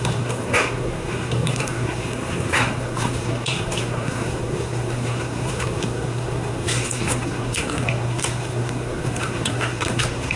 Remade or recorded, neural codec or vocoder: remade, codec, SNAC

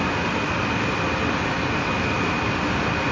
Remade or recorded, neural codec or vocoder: recorded